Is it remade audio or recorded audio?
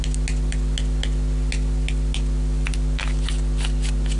recorded